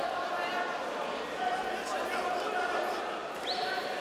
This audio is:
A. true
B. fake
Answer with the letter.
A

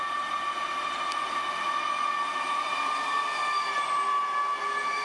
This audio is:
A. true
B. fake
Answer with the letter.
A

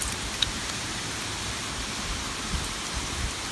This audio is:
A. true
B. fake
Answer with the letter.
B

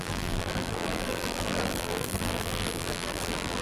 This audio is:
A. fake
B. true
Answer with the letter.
A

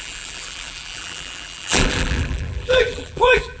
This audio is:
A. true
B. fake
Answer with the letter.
B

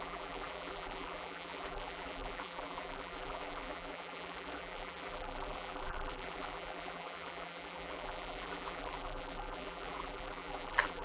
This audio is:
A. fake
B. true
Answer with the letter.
A